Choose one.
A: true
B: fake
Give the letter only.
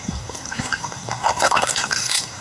B